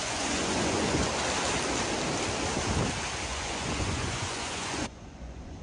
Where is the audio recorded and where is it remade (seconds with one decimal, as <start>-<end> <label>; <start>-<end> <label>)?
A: 0.0-1.1 remade; 1.1-3.3 recorded; 3.3-5.6 remade